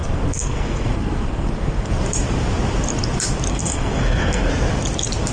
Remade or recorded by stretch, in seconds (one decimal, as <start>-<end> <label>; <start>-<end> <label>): 0.0-1.9 remade; 1.9-3.5 recorded; 3.5-4.5 remade; 4.5-5.3 recorded

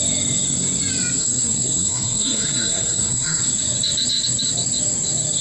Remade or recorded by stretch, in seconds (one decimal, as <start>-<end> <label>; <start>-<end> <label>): 0.0-1.2 recorded; 1.2-3.4 remade; 3.4-5.4 recorded

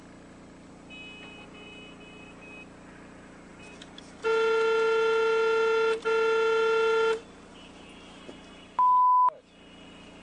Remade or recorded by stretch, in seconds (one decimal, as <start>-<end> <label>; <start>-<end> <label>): 0.0-10.2 recorded

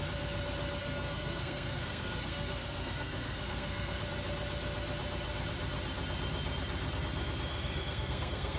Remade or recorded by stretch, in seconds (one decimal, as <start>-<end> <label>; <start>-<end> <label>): 0.0-0.8 recorded; 0.8-4.0 remade; 4.0-7.5 recorded; 7.5-8.6 remade

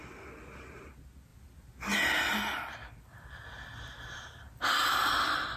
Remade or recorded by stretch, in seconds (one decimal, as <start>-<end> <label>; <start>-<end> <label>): 0.0-5.6 recorded